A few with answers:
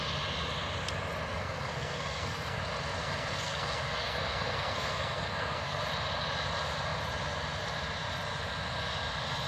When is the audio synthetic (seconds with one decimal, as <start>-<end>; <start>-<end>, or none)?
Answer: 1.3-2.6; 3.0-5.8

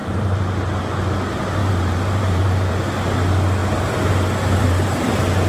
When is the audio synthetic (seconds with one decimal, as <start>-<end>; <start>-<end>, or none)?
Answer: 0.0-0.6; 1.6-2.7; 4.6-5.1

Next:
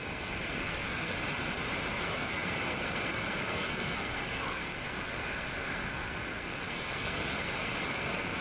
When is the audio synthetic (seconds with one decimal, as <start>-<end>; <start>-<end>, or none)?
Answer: 0.0-1.2; 1.9-8.4

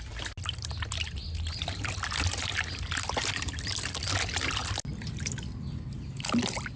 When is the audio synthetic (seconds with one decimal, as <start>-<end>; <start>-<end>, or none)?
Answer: none